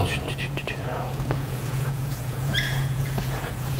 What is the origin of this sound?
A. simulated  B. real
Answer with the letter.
A